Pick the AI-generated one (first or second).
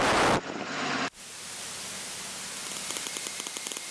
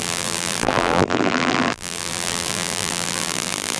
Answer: second